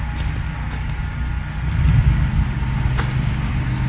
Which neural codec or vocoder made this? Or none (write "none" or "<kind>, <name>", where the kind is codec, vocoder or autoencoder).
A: none